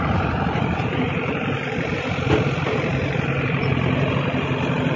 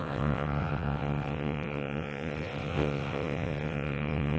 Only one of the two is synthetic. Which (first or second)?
second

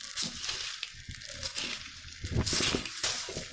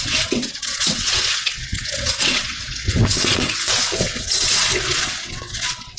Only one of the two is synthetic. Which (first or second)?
second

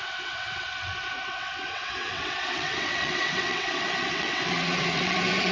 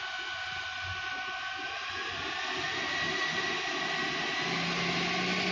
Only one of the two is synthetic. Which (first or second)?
first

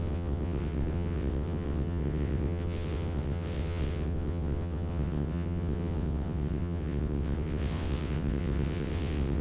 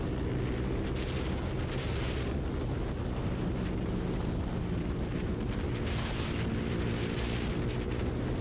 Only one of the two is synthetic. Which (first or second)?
first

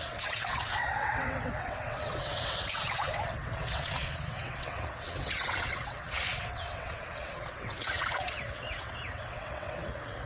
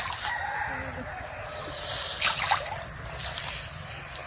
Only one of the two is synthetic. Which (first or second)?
first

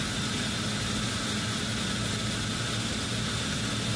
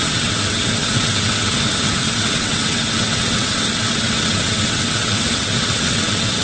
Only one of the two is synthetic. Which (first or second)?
second